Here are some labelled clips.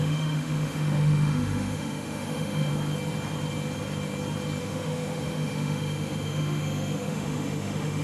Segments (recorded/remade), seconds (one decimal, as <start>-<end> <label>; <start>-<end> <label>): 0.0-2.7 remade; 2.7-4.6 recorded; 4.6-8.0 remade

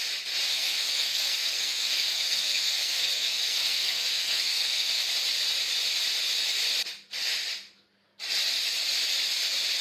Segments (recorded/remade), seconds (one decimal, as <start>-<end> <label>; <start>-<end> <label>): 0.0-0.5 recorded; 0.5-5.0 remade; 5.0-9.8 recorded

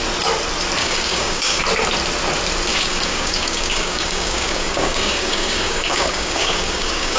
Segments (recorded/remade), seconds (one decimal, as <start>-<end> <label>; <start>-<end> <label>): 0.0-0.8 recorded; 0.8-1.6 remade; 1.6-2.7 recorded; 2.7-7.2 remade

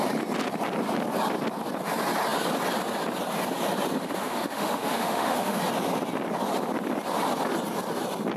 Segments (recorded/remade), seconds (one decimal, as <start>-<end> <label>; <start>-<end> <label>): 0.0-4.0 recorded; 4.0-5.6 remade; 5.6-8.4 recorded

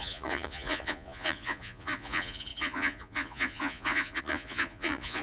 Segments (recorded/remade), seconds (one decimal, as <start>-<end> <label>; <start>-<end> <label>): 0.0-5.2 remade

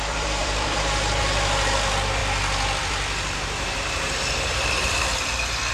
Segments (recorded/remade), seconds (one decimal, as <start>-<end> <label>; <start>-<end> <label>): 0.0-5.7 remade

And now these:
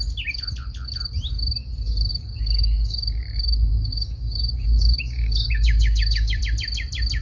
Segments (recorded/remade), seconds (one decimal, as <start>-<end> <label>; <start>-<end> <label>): 0.0-2.1 recorded; 2.1-6.4 remade; 6.4-7.2 recorded